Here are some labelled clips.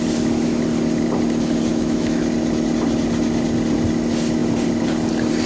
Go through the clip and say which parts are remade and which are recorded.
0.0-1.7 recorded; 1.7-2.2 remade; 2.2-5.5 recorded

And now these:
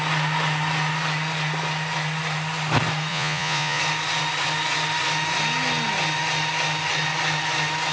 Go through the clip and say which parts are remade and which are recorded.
0.0-3.1 recorded; 3.1-3.8 remade; 3.8-7.9 recorded